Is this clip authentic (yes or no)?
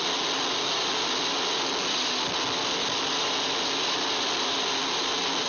yes